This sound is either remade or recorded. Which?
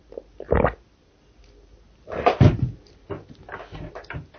recorded